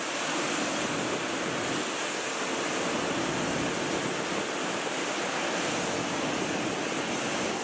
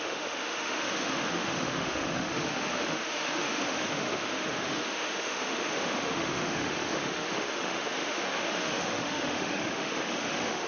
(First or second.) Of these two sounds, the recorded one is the first